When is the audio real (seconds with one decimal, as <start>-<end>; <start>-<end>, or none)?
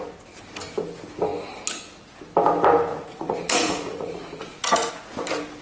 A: 0.0-2.9; 4.9-5.6